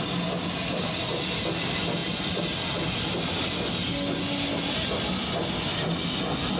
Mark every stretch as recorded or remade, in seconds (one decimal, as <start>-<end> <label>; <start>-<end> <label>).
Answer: 0.0-6.6 recorded